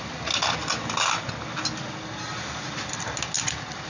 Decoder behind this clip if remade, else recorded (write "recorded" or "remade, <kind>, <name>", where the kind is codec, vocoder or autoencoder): recorded